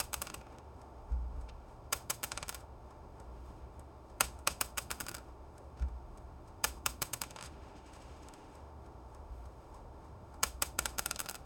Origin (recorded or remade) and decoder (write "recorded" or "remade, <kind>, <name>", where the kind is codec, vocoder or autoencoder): remade, autoencoder, DAC-VAE